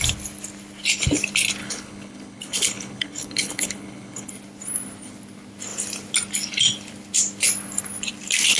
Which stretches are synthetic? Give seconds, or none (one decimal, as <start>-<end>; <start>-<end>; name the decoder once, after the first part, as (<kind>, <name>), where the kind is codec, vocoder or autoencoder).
1.6-4.3 (codec, HILCodec)